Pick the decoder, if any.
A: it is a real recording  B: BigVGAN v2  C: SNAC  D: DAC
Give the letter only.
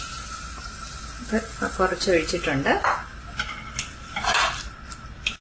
A